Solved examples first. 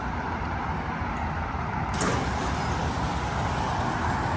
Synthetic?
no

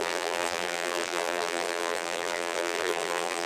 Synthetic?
yes